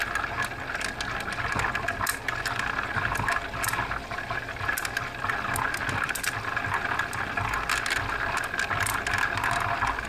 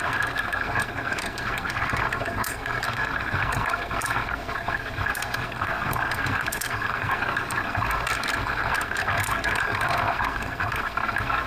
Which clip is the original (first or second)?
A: first